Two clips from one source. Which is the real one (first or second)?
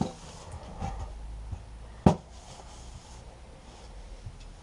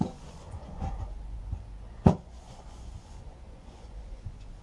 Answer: first